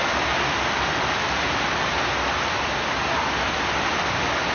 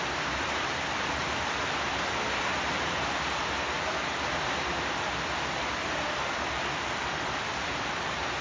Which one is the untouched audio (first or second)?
first